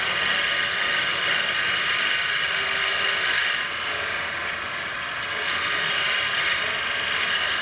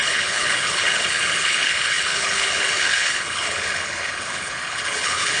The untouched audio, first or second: first